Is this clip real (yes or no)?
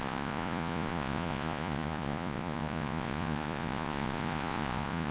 no